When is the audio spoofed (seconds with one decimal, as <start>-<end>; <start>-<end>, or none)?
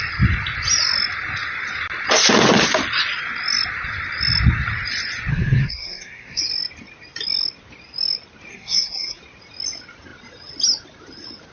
5.3-6.4; 8.5-9.2